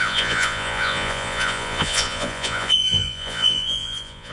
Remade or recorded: remade